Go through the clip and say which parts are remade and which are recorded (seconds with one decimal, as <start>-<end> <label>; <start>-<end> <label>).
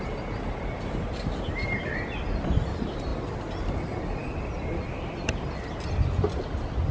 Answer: 0.0-6.9 recorded